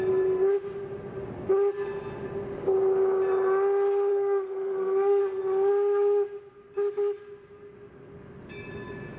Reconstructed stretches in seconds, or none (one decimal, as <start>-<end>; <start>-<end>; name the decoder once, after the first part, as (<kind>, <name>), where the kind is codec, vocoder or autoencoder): 4.1-5.2 (codec, SNAC)